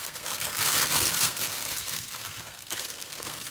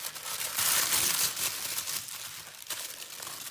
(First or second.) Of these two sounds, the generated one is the first